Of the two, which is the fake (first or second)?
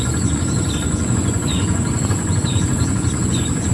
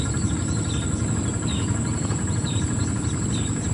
first